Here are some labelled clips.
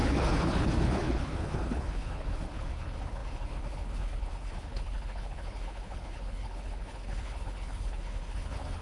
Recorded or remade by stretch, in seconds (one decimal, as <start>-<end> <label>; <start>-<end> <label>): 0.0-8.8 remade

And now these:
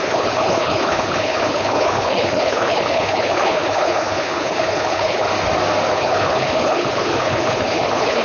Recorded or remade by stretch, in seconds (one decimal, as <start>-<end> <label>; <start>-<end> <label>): 0.0-5.3 remade; 5.3-5.9 recorded; 5.9-8.2 remade

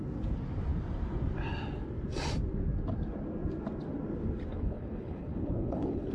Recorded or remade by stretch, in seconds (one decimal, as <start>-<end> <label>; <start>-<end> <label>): 0.0-4.5 recorded; 4.5-6.1 remade